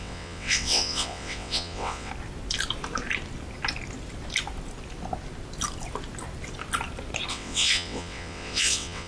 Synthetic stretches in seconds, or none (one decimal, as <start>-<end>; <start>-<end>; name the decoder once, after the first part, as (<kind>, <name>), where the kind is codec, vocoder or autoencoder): 0.0-2.1 (vocoder, WaveNeXt); 7.3-9.1